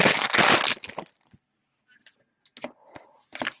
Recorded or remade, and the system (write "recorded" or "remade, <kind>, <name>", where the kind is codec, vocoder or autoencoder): recorded